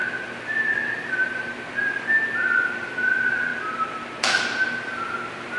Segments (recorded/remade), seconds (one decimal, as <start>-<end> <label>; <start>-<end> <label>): 0.0-3.5 recorded; 3.5-4.2 remade; 4.2-5.6 recorded